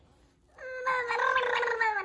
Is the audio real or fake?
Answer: real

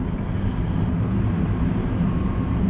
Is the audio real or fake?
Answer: real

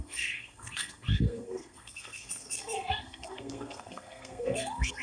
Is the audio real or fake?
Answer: fake